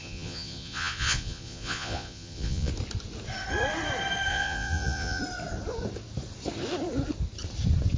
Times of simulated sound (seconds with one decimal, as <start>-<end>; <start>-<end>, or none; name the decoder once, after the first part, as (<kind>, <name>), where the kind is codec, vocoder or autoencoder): 0.0-2.7 (vocoder, Vocos); 4.3-5.2